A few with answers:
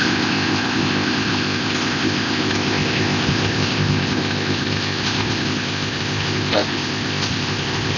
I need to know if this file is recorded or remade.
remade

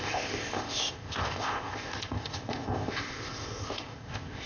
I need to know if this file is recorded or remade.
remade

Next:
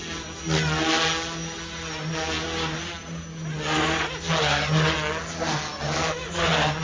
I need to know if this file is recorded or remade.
recorded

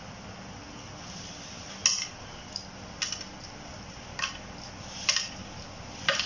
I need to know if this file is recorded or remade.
recorded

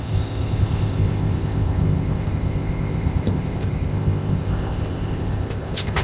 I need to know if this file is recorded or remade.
remade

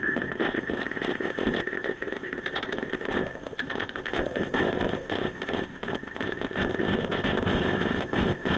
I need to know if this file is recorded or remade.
remade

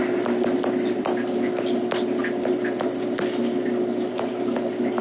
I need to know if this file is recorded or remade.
recorded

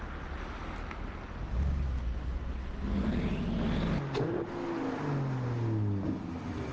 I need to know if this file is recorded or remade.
recorded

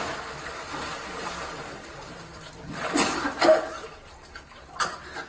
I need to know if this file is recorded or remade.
recorded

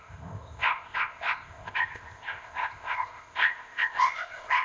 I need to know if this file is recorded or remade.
remade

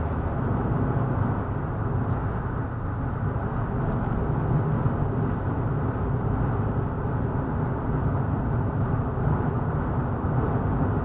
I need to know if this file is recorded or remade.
recorded